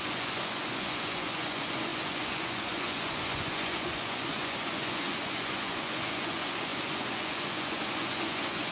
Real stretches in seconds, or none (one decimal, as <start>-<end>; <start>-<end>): none